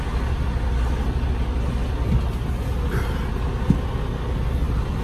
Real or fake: real